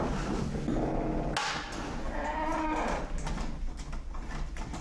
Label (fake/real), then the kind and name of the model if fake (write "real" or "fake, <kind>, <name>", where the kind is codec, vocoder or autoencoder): real